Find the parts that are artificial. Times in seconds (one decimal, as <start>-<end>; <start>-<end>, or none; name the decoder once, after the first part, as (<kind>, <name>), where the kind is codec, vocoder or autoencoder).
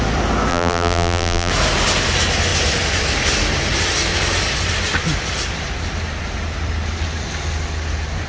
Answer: 0.5-1.5 (vocoder, BigVGAN v2)